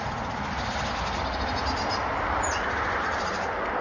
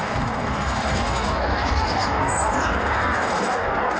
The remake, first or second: second